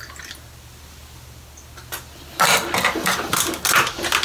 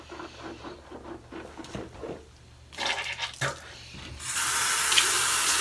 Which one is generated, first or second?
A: second